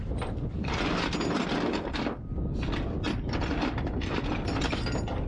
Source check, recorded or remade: recorded